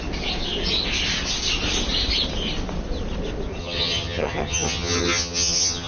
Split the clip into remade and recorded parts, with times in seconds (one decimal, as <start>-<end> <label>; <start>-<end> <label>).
0.0-3.6 recorded; 3.6-5.9 remade